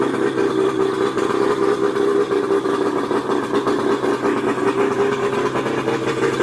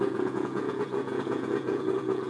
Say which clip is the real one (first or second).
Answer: first